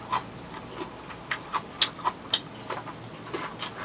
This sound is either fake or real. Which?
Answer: real